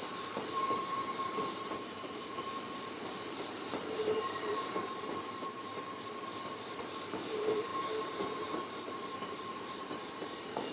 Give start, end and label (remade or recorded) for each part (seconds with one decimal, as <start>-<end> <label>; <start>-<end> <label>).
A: 0.0-5.7 remade; 5.7-6.8 recorded; 6.8-10.7 remade